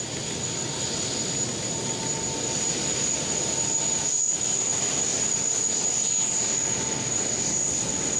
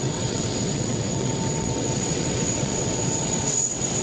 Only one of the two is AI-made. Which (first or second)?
second